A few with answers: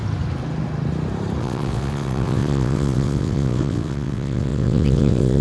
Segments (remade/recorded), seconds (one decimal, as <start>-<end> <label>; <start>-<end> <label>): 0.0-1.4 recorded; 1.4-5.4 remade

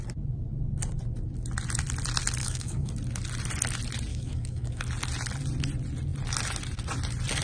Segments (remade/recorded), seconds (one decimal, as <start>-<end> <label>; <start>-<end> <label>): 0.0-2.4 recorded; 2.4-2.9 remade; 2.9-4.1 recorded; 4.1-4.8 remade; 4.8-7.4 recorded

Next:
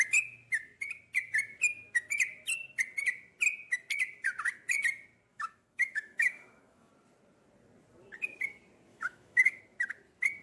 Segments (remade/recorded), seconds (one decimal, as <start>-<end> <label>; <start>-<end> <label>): 0.0-5.3 recorded; 5.3-6.9 remade; 6.9-8.9 recorded; 8.9-9.6 remade; 9.6-10.4 recorded

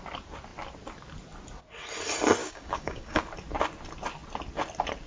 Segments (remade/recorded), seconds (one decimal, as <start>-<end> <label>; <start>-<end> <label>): 0.0-2.4 recorded; 2.4-3.2 remade; 3.2-5.1 recorded